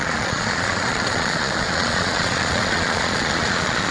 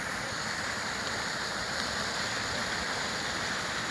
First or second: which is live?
second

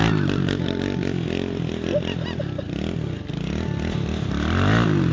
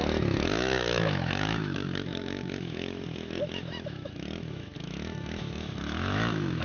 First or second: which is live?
first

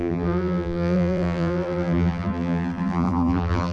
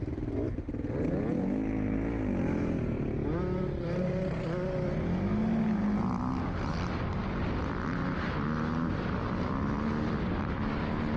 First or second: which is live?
second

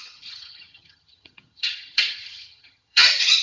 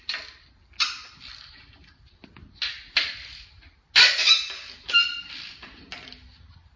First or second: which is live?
second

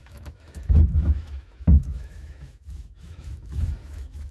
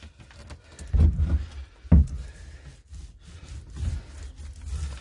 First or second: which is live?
second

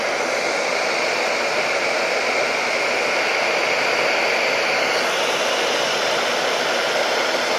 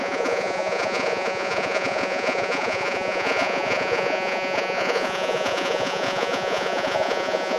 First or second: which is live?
first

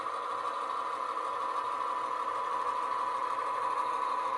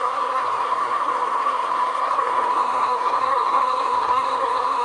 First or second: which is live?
first